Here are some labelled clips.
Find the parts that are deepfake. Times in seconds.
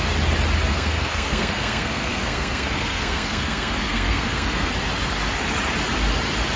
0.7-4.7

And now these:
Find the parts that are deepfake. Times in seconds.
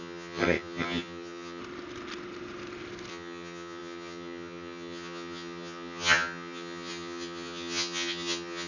0.0-1.6; 3.1-8.7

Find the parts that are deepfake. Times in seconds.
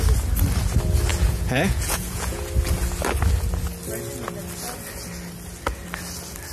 1.1-2.4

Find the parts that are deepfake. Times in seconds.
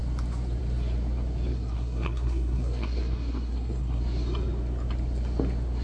1.5-4.0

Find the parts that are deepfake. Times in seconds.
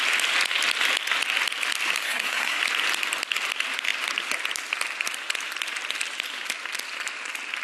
2.0-2.6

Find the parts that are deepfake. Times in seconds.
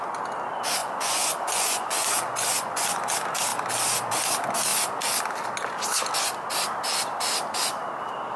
0.8-3.1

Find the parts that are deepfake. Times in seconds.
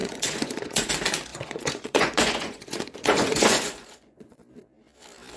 0.0-0.9; 1.3-4.4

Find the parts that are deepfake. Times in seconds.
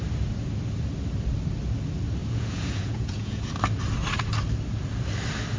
2.2-3.5